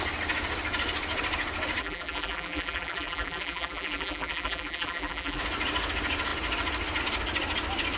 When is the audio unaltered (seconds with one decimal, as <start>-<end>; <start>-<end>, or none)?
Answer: 0.0-1.8; 5.4-8.0

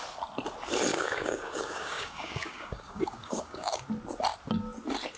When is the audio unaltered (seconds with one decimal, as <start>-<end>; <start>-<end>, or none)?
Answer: 0.0-0.9; 3.8-5.2

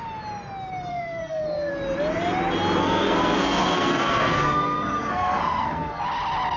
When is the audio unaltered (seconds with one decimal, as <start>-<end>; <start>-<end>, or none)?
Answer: 0.0-0.9; 1.7-2.8; 6.0-6.6

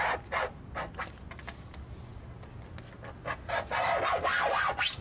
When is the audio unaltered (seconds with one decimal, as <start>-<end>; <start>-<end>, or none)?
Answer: 0.0-5.0

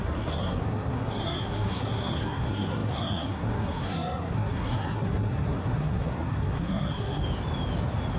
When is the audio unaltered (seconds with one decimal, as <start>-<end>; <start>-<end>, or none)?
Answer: 7.2-8.2